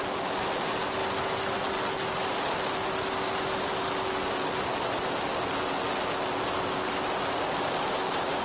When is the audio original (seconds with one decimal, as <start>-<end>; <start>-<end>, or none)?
0.0-8.4